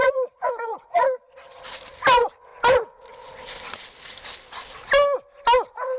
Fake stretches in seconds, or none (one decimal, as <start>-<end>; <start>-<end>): 0.0-1.6